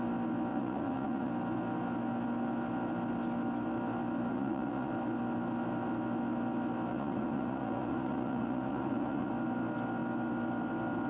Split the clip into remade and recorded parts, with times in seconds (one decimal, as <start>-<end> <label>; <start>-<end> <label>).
0.0-0.5 recorded; 0.5-1.3 remade; 1.3-4.3 recorded; 4.3-4.9 remade; 4.9-6.9 recorded; 6.9-9.3 remade; 9.3-11.1 recorded